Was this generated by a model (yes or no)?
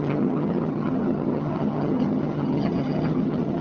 yes